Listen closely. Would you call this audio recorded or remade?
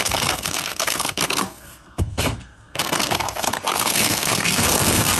remade